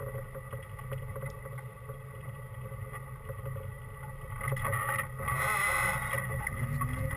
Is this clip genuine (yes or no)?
yes